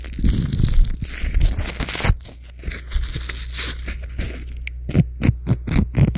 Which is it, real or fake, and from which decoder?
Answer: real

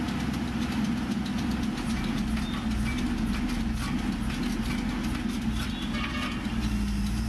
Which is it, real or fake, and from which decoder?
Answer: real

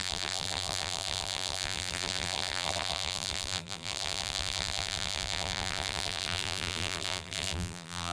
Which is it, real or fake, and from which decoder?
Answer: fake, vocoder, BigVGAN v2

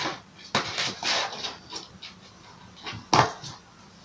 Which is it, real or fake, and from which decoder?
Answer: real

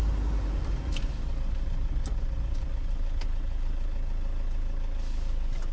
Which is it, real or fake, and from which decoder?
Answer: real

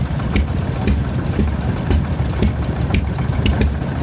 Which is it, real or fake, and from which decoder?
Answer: fake, vocoder, BigVGAN v2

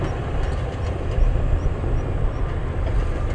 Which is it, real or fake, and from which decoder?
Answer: real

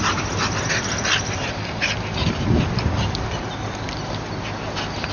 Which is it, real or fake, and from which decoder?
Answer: real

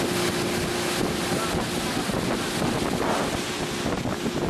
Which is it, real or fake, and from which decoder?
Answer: real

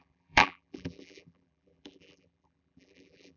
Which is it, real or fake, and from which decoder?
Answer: fake, vocoder, BigVGAN v2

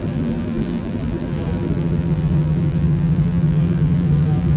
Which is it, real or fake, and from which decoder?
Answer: fake, vocoder, BigVGAN v2